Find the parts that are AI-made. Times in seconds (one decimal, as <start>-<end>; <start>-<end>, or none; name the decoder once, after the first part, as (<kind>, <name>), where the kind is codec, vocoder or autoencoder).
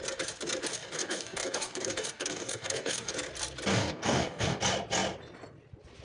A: 0.7-3.1 (codec, DAC); 3.7-4.6